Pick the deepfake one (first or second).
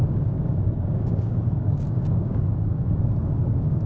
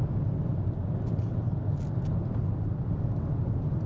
first